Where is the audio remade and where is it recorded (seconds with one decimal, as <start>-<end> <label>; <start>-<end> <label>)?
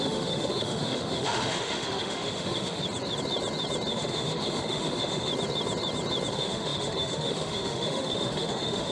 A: 0.0-2.8 remade; 2.8-3.9 recorded; 3.9-5.3 remade; 5.3-6.3 recorded; 6.3-8.9 remade